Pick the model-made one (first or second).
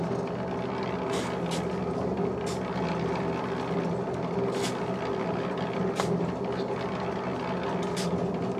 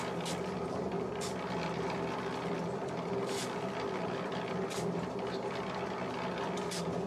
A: second